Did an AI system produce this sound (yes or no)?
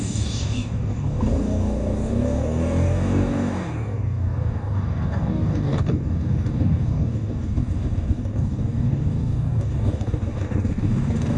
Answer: yes